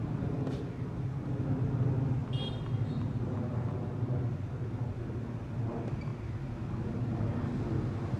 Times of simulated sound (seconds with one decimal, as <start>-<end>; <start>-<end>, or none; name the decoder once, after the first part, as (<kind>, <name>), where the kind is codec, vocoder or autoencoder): none